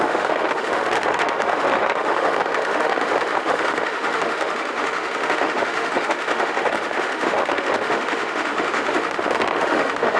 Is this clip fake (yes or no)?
yes